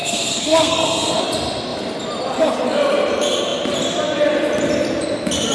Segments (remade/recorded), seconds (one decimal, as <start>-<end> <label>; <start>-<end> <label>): 0.0-1.2 remade; 1.2-5.5 recorded

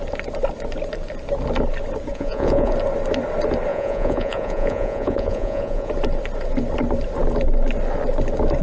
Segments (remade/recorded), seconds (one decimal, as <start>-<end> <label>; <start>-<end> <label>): 0.0-2.1 recorded; 2.1-2.7 remade; 2.7-3.7 recorded; 3.7-5.9 remade; 5.9-8.6 recorded